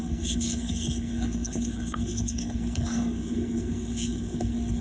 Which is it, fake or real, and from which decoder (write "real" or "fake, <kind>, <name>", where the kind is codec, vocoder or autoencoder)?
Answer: fake, codec, SNAC